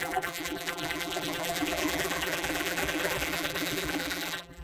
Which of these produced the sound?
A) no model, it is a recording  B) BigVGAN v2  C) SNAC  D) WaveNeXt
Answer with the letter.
B